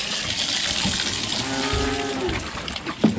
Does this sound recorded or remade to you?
recorded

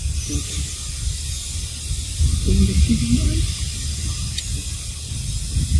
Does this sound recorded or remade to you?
recorded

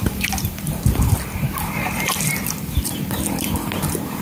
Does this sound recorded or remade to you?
remade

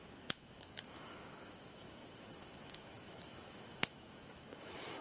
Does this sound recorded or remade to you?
remade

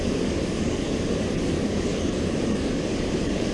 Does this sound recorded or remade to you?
remade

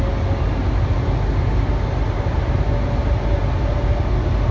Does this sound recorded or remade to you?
recorded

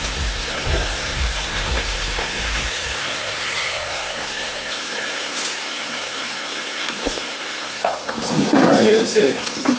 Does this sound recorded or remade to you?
remade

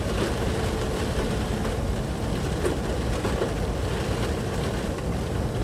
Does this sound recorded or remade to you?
recorded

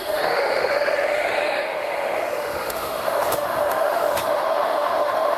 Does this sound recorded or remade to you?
remade